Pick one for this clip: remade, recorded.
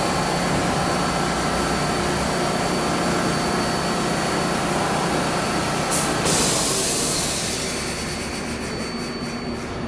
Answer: recorded